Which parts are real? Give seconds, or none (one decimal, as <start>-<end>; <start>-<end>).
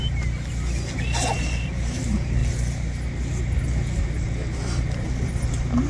0.0-5.9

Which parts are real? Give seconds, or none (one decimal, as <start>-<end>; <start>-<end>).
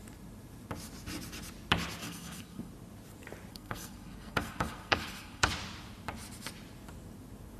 0.0-2.0; 2.7-3.5; 5.5-7.6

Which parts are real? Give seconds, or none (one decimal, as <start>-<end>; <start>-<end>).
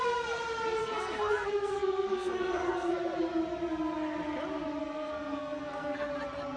0.0-0.8; 2.9-4.8; 6.1-6.6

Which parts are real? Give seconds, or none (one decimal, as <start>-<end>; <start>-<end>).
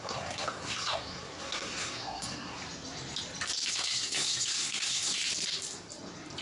2.6-3.7; 5.2-6.4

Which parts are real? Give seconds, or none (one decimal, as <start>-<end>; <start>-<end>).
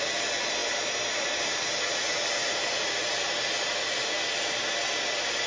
0.0-5.5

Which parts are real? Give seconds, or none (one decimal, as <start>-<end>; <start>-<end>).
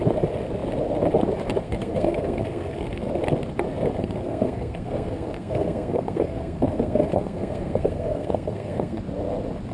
0.0-1.6; 3.1-4.0; 9.0-9.7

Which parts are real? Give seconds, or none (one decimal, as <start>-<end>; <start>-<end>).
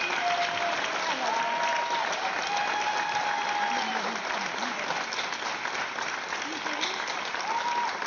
0.0-8.1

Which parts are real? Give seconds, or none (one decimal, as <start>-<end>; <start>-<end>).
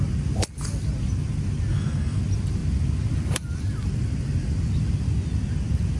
0.0-1.7; 2.2-6.0